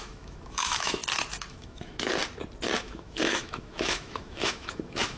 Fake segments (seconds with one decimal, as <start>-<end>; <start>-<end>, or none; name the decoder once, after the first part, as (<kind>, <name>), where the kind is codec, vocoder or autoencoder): 0.0-1.0 (autoencoder, DAC-VAE); 1.5-2.1; 2.8-5.2